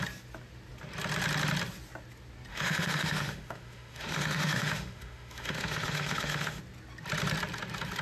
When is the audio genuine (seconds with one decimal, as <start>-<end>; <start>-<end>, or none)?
0.0-2.5; 6.6-8.0